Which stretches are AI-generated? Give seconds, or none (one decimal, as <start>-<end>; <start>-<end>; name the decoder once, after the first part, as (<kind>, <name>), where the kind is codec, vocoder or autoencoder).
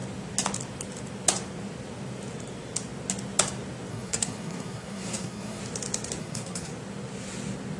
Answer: 3.9-5.6 (codec, SNAC); 6.2-6.7